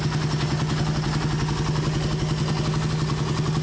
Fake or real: real